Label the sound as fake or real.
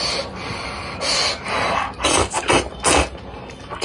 real